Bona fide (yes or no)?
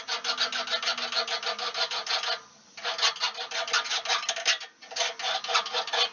yes